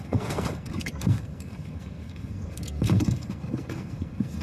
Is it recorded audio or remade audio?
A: remade